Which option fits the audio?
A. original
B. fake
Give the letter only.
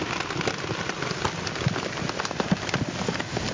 A